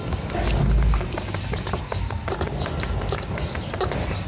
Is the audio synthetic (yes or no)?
no